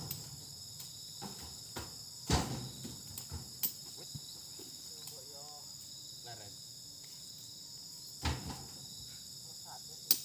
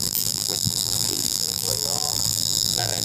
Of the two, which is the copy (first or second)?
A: second